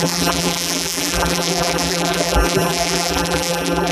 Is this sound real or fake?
fake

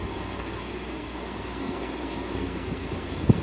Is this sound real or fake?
fake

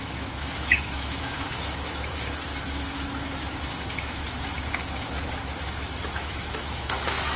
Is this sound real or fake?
fake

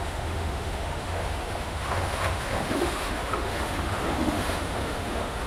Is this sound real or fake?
fake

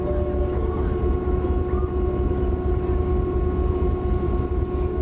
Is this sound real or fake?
real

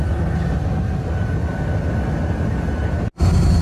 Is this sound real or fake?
real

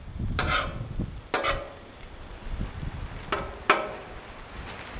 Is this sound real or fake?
real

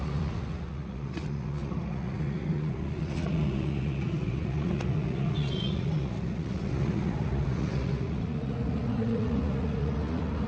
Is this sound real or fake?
fake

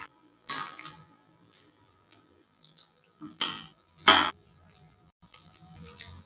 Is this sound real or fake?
fake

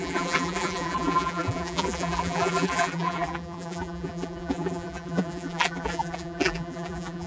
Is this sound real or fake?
fake